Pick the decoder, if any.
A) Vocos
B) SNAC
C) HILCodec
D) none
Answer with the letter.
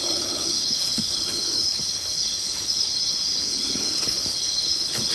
C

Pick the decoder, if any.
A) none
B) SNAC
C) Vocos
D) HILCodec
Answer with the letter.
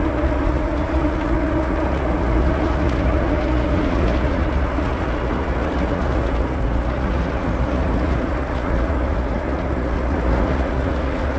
C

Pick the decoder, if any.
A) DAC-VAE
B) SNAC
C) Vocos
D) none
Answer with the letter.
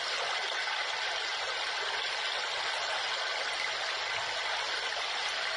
D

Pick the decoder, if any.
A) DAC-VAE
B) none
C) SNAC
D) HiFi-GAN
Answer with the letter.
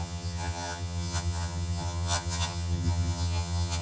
D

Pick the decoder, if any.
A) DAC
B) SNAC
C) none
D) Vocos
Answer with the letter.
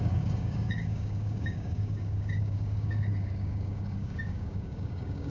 A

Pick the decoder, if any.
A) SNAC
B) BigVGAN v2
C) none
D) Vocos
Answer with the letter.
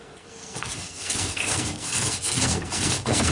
A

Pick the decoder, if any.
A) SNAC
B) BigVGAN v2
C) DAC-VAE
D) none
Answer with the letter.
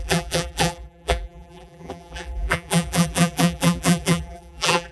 B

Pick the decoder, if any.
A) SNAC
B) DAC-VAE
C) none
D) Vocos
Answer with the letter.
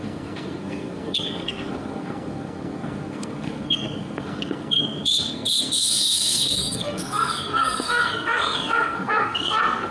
A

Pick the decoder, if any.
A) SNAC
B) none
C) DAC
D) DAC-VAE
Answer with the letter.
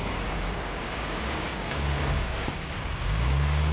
C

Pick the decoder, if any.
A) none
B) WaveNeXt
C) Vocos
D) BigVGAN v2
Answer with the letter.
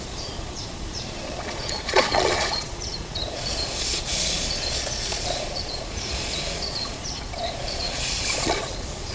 C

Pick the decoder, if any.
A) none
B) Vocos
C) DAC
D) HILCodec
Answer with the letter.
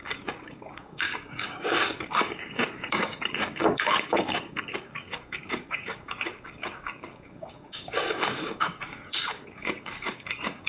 C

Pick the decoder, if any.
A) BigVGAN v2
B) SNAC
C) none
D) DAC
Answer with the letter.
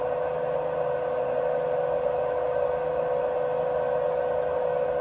C